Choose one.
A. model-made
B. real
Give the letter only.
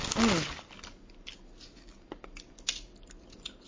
B